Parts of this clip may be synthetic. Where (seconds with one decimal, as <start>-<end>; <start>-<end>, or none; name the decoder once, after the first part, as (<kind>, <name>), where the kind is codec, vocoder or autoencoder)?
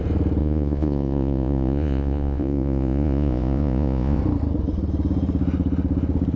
0.4-4.2 (vocoder, Vocos)